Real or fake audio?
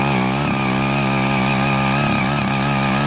real